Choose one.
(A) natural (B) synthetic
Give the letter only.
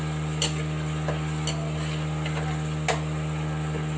A